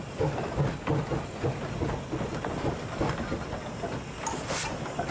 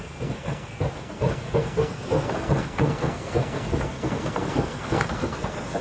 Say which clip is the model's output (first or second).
second